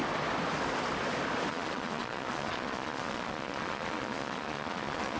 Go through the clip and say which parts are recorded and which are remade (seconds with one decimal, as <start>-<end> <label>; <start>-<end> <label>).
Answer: 0.0-1.5 recorded; 1.5-5.2 remade